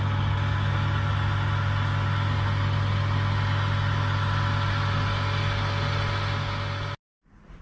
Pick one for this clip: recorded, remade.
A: recorded